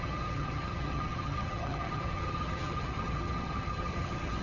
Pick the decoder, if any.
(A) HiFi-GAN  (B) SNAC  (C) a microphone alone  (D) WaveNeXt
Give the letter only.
A